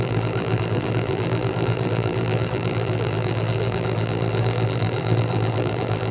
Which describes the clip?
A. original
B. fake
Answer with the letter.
B